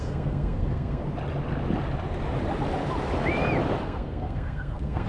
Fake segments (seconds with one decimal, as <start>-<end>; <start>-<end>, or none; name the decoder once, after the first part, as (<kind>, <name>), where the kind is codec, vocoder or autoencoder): 0.0-1.0 (codec, SNAC); 3.8-5.1